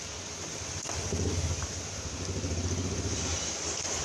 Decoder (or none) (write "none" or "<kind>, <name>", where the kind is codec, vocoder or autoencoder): none